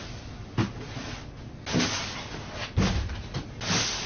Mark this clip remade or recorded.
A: recorded